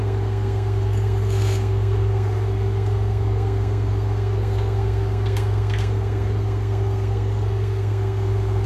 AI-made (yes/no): yes